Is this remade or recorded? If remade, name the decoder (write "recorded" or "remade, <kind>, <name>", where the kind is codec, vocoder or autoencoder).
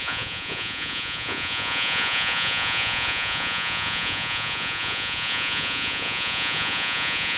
remade, vocoder, Vocos